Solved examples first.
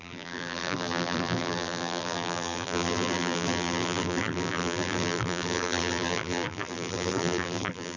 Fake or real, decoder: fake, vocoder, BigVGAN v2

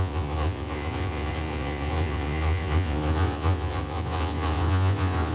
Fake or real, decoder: fake, vocoder, Vocos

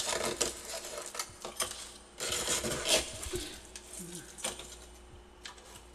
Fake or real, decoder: real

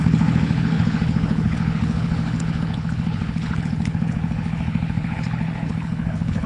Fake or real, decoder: fake, codec, HILCodec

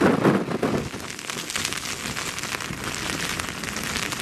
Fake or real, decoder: real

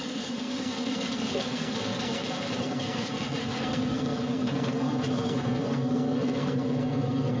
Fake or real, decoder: fake, codec, SNAC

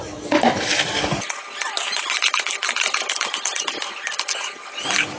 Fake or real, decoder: real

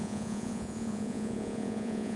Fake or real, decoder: fake, vocoder, Vocos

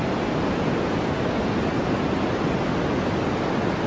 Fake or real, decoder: real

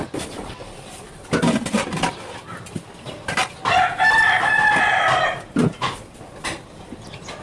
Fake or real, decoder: fake, vocoder, BigVGAN v2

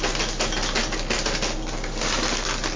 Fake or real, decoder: real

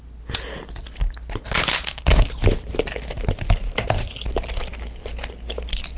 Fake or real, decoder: real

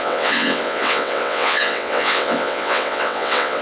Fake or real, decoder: fake, vocoder, WaveNeXt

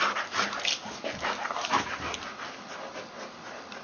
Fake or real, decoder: fake, vocoder, BigVGAN v2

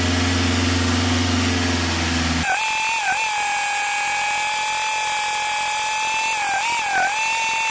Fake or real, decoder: real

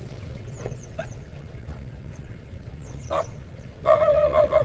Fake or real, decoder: fake, vocoder, WaveNeXt